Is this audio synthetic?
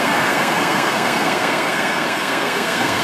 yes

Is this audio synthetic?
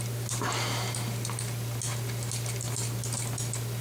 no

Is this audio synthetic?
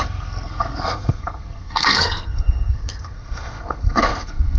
yes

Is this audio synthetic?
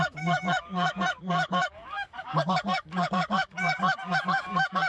yes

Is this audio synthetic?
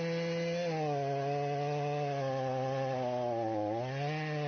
no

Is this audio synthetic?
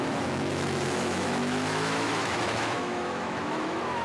yes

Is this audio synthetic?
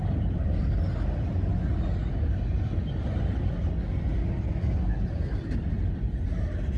no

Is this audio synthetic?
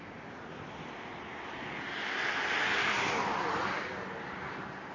no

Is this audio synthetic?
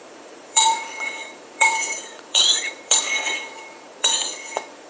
yes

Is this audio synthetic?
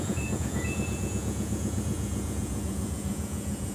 yes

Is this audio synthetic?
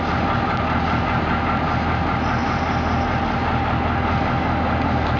no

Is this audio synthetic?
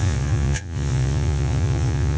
yes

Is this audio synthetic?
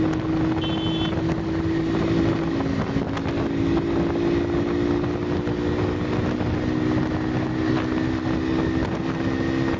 no